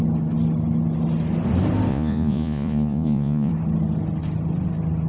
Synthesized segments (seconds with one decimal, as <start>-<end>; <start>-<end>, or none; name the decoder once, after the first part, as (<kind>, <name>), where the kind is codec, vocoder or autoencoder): 1.9-3.5 (vocoder, Vocos)